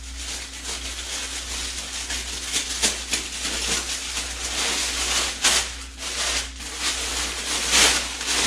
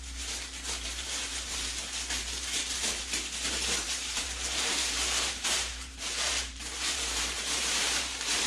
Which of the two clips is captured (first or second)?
first